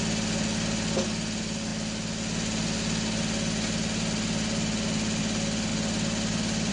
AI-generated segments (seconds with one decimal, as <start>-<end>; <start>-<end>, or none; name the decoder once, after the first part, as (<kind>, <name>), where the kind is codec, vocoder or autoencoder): none